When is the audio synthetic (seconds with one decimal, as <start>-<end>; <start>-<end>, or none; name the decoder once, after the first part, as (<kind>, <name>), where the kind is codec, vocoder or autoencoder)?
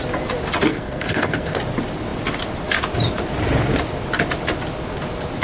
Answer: 0.7-1.6 (codec, SNAC)